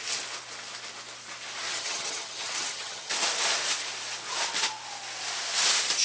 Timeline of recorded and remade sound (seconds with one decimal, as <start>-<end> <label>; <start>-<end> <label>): 0.0-1.7 recorded; 1.7-3.1 remade; 3.1-6.0 recorded